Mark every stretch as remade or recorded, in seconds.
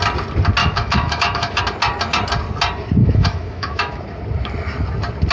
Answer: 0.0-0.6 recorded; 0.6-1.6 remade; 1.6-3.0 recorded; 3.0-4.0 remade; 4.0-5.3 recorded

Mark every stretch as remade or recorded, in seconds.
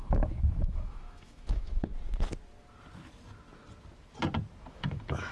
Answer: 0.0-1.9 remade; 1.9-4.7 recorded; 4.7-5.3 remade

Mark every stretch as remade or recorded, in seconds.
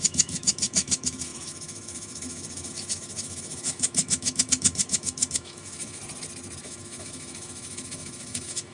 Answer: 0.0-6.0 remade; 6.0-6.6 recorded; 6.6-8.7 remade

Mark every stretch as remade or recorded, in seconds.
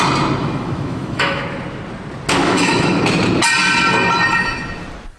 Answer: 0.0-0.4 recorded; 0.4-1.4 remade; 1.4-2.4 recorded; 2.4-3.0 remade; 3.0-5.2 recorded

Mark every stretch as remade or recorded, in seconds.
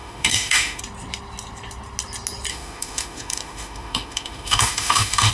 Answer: 0.0-0.8 remade; 0.8-2.5 recorded; 2.5-5.3 remade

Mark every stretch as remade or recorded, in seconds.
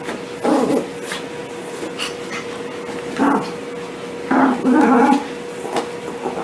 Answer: 0.0-6.4 recorded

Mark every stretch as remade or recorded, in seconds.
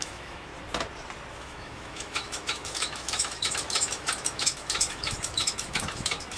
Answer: 0.0-0.5 remade; 0.5-1.3 recorded; 1.3-6.4 remade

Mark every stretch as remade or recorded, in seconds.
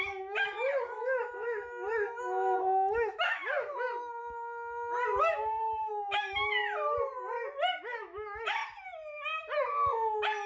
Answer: 0.0-4.2 remade; 4.2-5.3 recorded; 5.3-6.6 remade; 6.6-7.8 recorded; 7.8-8.6 remade; 8.6-10.5 recorded